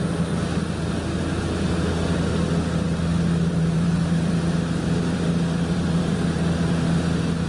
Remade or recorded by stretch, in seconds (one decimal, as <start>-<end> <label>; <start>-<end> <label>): 0.0-3.1 recorded; 3.1-6.7 remade; 6.7-7.5 recorded

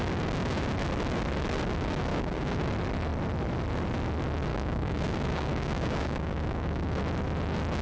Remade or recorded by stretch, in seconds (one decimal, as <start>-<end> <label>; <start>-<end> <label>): 0.0-2.1 recorded; 2.1-2.7 remade; 2.7-4.5 recorded; 4.5-7.0 remade; 7.0-7.8 recorded

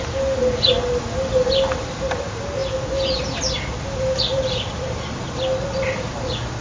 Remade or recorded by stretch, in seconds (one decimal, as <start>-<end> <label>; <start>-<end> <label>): 0.0-6.6 recorded

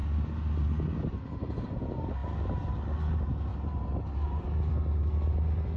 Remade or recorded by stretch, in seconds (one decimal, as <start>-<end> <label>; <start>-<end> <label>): 0.0-3.5 recorded; 3.5-4.7 remade; 4.7-5.8 recorded

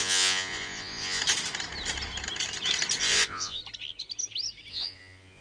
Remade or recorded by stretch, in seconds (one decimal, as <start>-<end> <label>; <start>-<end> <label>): 0.0-1.2 remade; 1.2-3.0 recorded; 3.0-3.6 remade; 3.6-4.7 recorded; 4.7-5.4 remade

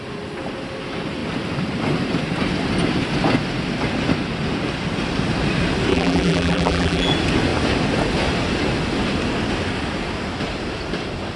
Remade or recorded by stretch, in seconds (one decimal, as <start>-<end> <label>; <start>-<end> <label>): 0.0-5.9 recorded; 5.9-7.1 remade; 7.1-11.4 recorded

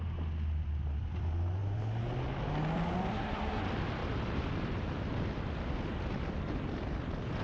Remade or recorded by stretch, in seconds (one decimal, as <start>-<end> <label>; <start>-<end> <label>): 0.0-3.1 recorded; 3.1-3.6 remade; 3.6-7.4 recorded